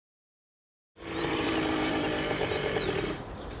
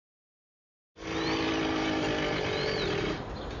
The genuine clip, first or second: second